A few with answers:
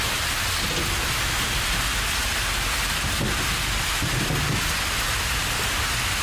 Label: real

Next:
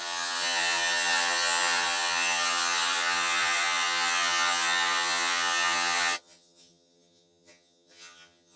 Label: fake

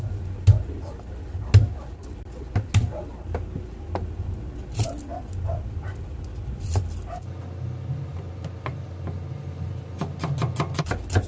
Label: real